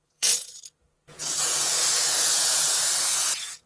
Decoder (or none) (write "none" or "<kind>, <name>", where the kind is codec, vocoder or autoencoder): vocoder, Vocos